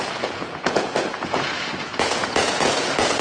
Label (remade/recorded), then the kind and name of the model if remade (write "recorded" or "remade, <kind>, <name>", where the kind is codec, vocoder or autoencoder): remade, vocoder, Vocos